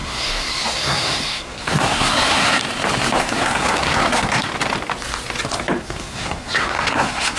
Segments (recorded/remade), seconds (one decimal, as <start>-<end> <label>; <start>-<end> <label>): 0.0-2.6 remade; 2.6-3.2 recorded; 3.2-4.5 remade; 4.5-5.8 recorded; 5.8-7.4 remade